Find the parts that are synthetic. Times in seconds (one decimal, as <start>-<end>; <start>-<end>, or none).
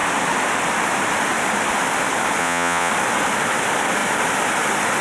2.4-2.9